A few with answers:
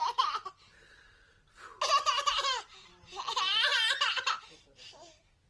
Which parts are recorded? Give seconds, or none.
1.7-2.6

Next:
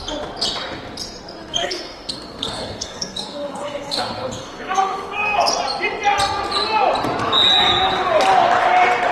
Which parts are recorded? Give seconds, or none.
0.0-1.6; 5.5-9.1

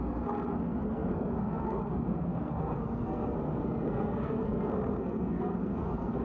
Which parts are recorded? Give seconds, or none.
none

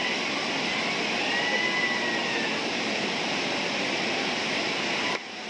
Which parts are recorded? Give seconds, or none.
0.0-5.5

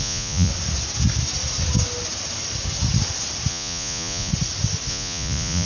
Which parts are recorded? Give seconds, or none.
0.5-3.5; 4.3-4.9